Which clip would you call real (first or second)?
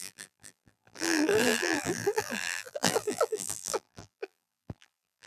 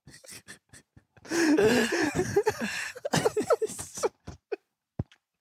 second